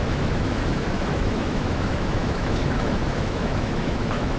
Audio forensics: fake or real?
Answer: fake